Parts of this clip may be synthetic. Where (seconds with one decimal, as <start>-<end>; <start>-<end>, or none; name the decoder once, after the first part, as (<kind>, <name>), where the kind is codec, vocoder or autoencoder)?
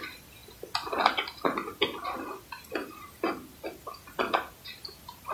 none